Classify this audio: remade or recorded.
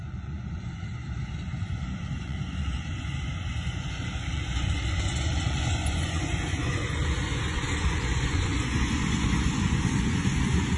remade